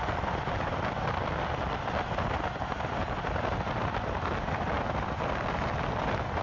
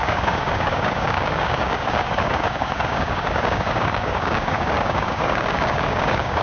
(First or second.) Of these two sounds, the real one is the first